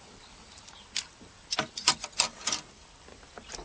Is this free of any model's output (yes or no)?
yes